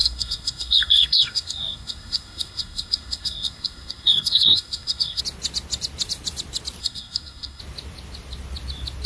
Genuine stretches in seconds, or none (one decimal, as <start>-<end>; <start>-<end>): 5.2-6.8; 7.6-9.1